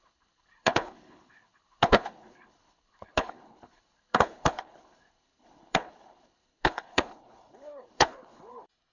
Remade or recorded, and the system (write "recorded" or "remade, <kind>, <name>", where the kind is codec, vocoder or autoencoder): remade, codec, HILCodec